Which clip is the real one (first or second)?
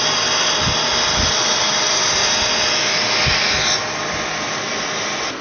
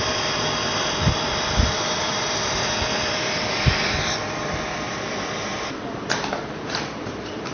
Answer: first